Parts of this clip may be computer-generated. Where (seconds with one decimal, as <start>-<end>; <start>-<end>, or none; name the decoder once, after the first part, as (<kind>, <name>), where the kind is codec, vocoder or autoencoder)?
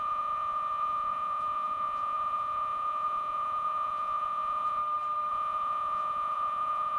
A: 0.0-4.8 (vocoder, Vocos); 5.3-7.0